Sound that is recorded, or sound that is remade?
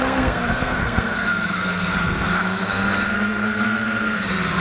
remade